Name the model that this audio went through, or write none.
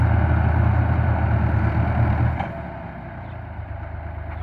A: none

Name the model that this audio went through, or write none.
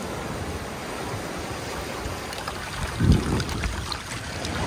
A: none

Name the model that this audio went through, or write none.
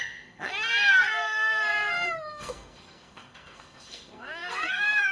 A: codec, SNAC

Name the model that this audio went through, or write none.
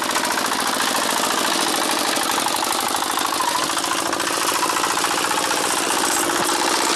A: none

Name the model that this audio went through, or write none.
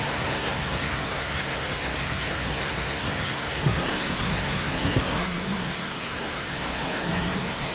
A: codec, SNAC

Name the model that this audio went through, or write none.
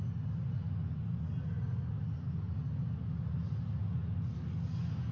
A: none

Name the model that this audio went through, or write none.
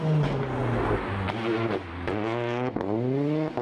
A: none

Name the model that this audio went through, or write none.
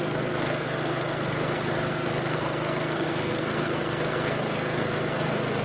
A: codec, SNAC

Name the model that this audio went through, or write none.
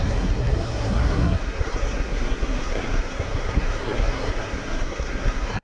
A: codec, SNAC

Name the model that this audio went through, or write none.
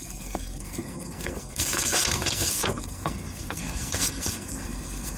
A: codec, SNAC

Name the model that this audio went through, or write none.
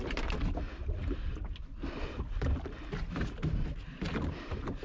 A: none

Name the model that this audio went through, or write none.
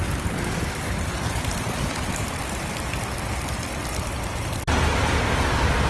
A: none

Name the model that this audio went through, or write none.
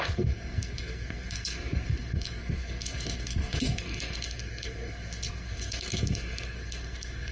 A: codec, SNAC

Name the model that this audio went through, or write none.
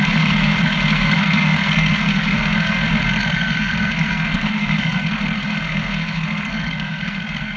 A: codec, SNAC